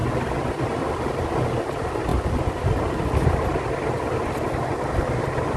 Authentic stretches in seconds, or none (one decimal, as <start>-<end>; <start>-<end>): 0.0-5.6